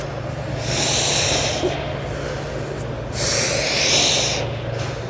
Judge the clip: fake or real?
real